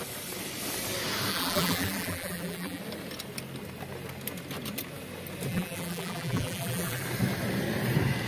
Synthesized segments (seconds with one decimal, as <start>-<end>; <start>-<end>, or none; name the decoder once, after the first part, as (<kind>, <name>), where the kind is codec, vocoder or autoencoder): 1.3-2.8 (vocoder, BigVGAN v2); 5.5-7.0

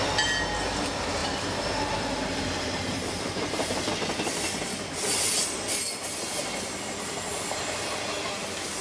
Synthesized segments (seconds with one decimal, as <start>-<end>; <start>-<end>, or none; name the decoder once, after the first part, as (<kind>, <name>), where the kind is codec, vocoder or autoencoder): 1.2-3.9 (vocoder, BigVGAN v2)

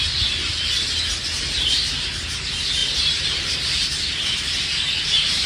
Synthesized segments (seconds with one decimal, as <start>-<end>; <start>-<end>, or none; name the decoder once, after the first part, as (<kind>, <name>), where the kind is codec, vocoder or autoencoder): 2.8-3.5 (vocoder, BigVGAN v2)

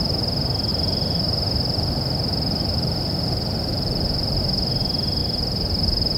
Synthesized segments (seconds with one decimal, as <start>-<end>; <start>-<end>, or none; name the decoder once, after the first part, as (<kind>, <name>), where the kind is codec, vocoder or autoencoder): 0.7-4.4 (vocoder, BigVGAN v2); 5.2-6.2